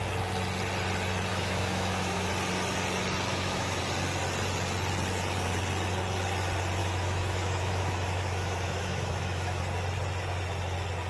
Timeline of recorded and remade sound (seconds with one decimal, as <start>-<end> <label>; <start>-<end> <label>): 0.0-1.3 recorded; 1.3-2.3 remade; 2.3-3.3 recorded; 3.3-3.8 remade; 3.8-6.8 recorded; 6.8-9.6 remade; 9.6-11.1 recorded